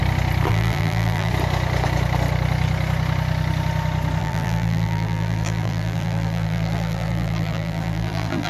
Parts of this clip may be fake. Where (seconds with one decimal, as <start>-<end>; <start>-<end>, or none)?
0.5-1.3; 4.2-8.5